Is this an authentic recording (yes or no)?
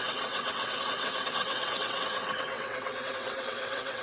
no